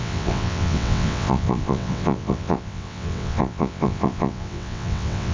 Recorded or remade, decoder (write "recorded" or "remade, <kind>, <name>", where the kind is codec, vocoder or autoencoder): remade, vocoder, WaveNeXt